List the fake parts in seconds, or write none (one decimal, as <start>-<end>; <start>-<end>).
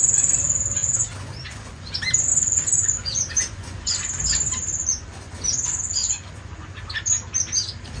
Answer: 0.8-1.9; 2.3-3.9; 4.8-5.3; 6.0-6.8